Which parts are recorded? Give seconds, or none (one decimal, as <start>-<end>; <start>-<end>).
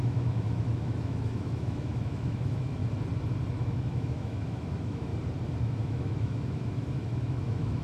2.8-3.5; 5.1-5.6